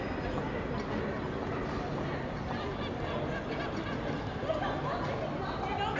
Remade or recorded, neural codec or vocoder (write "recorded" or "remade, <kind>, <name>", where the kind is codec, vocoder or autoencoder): recorded